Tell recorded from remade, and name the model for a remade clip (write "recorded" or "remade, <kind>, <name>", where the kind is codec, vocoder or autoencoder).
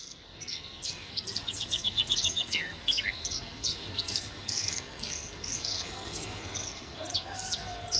remade, codec, SNAC